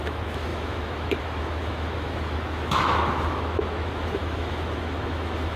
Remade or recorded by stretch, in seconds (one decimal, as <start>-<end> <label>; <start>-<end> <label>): 0.0-5.6 remade